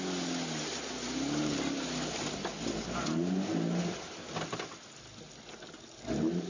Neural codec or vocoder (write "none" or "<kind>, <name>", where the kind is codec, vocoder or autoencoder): none